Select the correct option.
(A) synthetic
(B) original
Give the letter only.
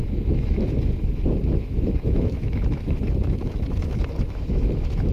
A